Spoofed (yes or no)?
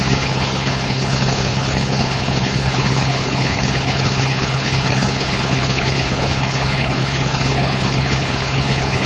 yes